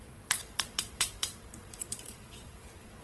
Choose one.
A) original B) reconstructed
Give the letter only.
B